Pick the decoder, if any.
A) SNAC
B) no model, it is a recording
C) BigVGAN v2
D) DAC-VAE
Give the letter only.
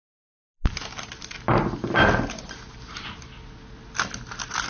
B